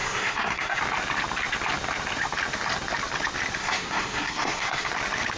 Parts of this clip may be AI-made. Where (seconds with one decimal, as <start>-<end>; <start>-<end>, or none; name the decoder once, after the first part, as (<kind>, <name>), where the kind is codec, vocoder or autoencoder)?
0.0-0.8 (codec, SNAC); 3.6-4.9